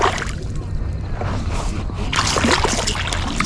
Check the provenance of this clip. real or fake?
real